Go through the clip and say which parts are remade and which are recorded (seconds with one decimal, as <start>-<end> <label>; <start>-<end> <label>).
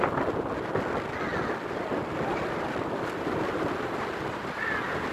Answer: 0.0-5.1 recorded